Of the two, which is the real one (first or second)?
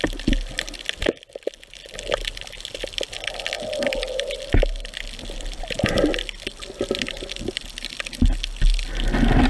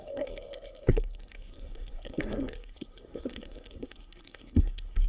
first